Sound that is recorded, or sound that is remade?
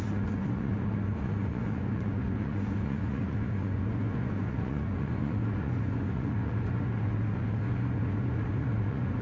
remade